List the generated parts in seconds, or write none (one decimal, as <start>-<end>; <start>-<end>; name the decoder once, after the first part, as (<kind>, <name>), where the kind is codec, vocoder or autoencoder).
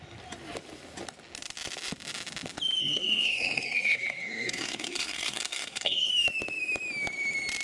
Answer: 2.8-6.1 (codec, SNAC)